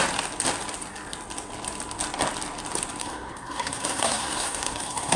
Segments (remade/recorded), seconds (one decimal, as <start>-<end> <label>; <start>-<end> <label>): 0.0-3.0 recorded; 3.0-5.2 remade